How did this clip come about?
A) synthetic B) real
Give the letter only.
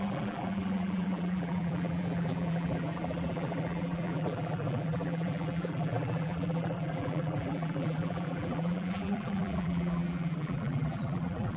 A